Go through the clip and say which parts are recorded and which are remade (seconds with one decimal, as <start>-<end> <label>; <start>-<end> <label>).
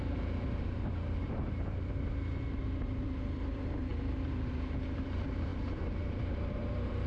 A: 0.0-7.1 remade